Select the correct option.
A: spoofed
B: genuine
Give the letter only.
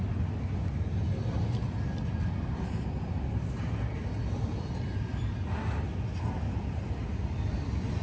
B